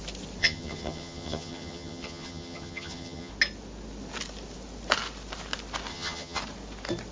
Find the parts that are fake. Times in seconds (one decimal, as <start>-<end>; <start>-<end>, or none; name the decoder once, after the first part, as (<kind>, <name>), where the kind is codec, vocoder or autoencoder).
0.4-3.3 (vocoder, HiFi-GAN); 5.9-6.4